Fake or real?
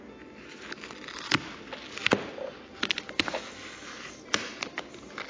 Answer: real